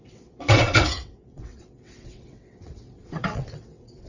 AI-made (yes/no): yes